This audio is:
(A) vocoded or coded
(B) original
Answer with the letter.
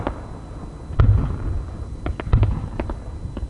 B